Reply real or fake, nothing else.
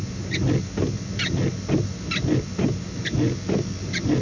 real